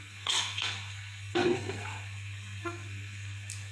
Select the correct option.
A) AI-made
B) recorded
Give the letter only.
A